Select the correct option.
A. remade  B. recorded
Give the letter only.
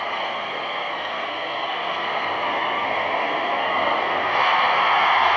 A